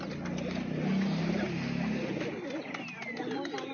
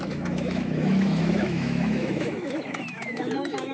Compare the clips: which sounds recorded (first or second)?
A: first